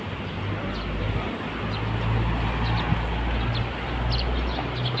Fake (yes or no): no